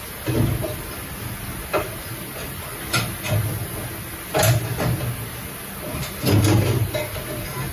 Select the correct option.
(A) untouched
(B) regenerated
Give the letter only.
A